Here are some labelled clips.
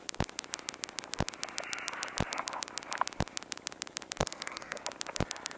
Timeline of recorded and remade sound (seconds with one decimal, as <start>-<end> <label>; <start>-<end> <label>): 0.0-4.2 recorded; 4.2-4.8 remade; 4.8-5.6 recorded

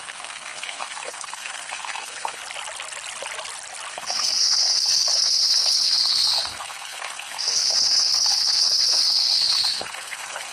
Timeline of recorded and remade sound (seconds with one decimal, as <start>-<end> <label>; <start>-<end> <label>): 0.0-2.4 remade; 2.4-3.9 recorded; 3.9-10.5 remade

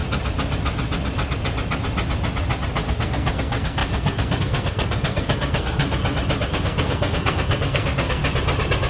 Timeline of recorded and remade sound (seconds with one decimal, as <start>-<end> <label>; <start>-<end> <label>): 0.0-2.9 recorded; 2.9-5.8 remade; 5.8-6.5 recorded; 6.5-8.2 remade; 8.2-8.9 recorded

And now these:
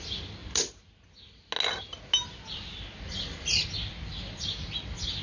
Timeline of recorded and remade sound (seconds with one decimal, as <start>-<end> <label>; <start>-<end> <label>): 0.0-5.2 recorded

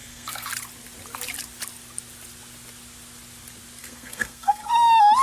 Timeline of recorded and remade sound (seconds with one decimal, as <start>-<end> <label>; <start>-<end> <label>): 0.0-0.5 remade; 0.5-3.8 recorded; 3.8-4.7 remade; 4.7-5.2 recorded

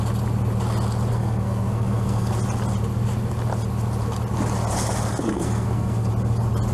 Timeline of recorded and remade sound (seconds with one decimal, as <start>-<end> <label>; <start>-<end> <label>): 0.0-1.1 recorded; 1.1-2.3 remade; 2.3-5.3 recorded; 5.3-6.1 remade; 6.1-6.7 recorded

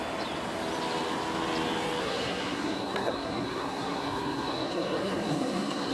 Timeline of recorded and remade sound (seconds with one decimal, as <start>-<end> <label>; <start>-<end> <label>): 0.0-2.0 recorded; 2.0-5.9 remade